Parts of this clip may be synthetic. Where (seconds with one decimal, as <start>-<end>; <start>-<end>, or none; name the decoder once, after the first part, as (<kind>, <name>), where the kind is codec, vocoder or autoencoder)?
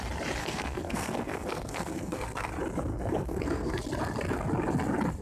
0.4-2.5 (codec, SNAC); 2.9-3.8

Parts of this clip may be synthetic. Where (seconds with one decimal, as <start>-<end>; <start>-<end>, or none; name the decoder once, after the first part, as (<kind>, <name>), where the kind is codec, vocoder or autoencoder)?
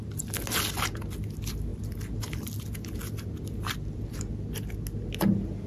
none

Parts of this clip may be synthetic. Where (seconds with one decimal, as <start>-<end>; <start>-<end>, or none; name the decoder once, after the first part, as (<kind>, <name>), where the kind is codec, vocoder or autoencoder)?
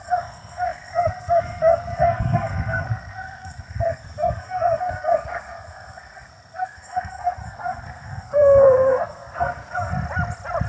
0.0-9.9 (codec, SNAC)